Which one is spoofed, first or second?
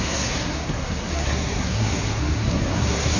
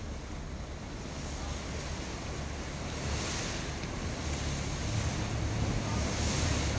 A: first